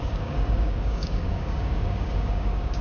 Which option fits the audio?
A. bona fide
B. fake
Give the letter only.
B